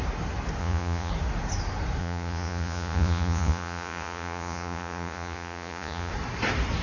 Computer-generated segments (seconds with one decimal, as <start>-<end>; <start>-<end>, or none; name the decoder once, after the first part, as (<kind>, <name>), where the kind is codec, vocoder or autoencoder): 0.6-1.1 (vocoder, Vocos); 2.0-6.1